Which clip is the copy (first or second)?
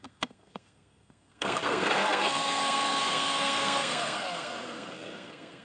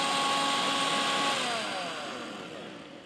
first